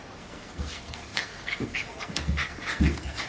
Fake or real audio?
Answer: fake